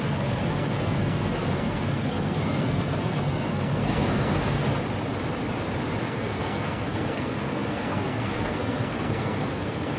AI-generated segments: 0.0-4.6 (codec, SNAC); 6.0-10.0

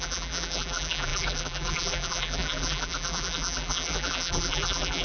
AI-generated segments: 0.0-5.0 (vocoder, BigVGAN v2)

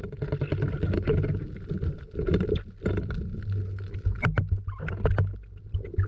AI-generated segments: none

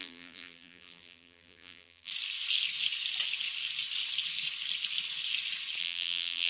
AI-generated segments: 0.0-2.1 (vocoder, BigVGAN v2); 5.8-6.5